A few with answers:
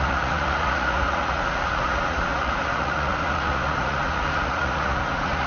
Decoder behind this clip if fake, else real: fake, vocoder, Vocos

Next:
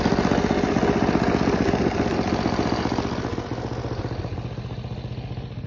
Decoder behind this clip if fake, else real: real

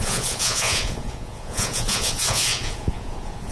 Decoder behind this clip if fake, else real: fake, vocoder, Vocos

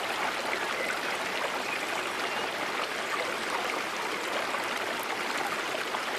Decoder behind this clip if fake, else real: real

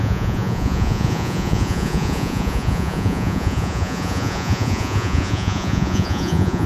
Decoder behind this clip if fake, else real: fake, vocoder, Vocos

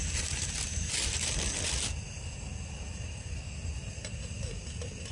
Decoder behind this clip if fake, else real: real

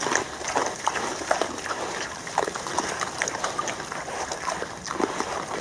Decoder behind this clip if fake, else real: real